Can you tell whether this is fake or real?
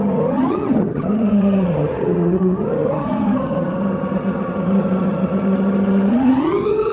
fake